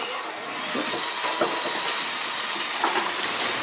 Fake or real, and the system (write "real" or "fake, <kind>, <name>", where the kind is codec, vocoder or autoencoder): real